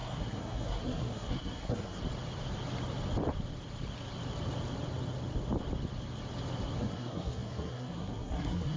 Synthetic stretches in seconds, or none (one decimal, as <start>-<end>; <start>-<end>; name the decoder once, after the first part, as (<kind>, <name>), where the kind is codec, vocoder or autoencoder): 0.0-2.0 (codec, SNAC); 6.8-8.8